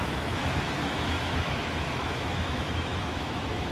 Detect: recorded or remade remade